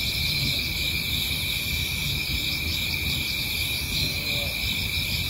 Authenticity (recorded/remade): recorded